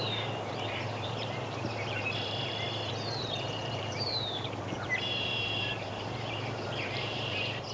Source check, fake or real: fake